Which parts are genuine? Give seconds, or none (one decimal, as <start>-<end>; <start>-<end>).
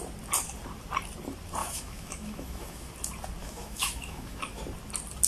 0.0-1.6; 2.9-3.4; 4.6-5.3